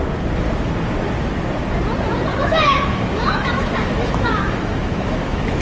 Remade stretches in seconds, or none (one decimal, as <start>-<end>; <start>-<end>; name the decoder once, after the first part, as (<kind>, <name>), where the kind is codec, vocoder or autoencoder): 2.3-5.6 (autoencoder, DAC-VAE)

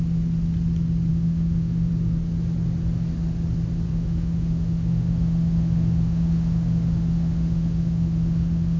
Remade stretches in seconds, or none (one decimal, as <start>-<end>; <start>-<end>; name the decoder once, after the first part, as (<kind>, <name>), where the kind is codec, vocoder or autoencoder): 1.1-1.9 (autoencoder, DAC-VAE); 3.9-8.8

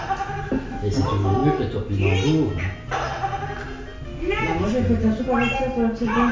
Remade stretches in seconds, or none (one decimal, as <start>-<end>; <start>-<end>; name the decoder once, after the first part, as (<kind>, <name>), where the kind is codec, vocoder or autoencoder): none

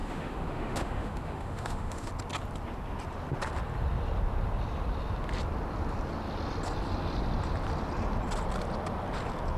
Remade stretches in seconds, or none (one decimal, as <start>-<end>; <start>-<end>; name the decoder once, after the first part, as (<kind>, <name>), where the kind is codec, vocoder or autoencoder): 0.0-2.1 (autoencoder, DAC-VAE)

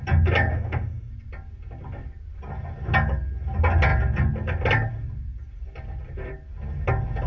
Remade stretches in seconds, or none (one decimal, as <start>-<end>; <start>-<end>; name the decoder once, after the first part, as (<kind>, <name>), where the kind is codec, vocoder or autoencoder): 0.5-1.1 (autoencoder, DAC-VAE)

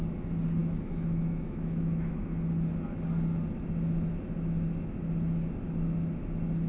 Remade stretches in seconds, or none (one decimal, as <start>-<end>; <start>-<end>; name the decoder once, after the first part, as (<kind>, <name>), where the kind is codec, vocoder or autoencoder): 0.6-2.2 (autoencoder, DAC-VAE)

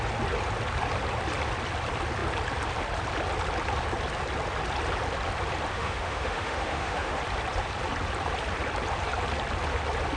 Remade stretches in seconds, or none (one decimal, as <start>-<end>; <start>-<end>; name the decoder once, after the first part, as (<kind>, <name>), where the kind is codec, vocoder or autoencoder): 5.7-7.2 (autoencoder, DAC-VAE)